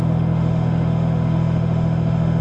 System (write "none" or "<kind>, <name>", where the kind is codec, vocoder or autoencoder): autoencoder, DAC-VAE